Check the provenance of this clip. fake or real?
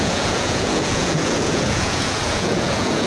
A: fake